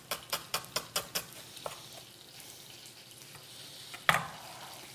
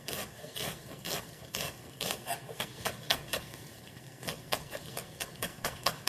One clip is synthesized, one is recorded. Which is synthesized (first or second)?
second